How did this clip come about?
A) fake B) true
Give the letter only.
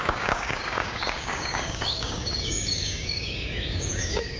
A